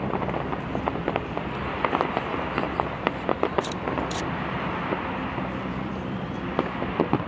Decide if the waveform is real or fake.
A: real